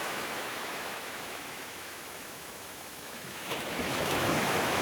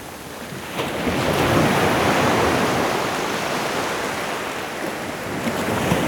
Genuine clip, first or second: second